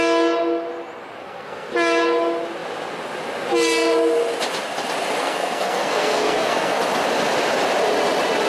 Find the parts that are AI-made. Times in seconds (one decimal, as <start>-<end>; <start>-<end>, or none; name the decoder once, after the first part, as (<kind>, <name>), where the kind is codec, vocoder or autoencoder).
1.2-1.7 (codec, SNAC); 5.2-6.8